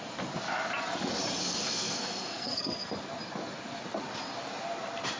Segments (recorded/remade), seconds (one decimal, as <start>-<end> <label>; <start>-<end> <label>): 0.0-1.5 recorded; 1.5-2.9 remade; 2.9-5.2 recorded